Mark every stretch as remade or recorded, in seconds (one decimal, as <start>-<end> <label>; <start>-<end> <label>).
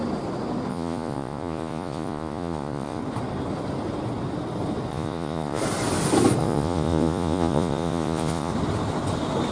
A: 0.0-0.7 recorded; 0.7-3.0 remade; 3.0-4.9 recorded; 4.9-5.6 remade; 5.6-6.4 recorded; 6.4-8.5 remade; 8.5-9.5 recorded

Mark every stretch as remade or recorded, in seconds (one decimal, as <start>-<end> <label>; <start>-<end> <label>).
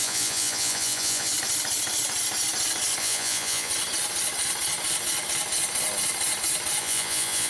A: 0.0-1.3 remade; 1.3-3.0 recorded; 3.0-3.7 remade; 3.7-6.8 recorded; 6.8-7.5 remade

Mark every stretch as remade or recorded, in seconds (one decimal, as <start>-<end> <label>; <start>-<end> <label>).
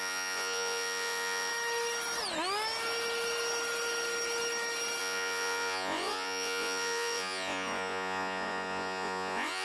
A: 0.0-1.5 remade; 1.5-5.0 recorded; 5.0-9.6 remade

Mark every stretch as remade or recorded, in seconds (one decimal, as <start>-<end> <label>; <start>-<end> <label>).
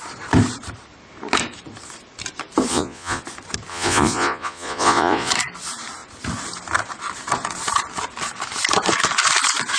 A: 0.0-2.7 recorded; 2.7-3.2 remade; 3.2-3.7 recorded; 3.7-5.3 remade; 5.3-9.8 recorded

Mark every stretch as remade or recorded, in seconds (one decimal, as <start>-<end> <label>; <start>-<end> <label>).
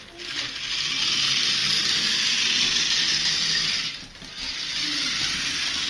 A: 0.0-5.9 recorded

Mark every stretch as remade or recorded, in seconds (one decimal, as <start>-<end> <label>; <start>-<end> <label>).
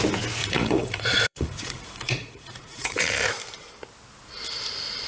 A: 0.0-0.4 recorded; 0.4-3.0 remade; 3.0-5.1 recorded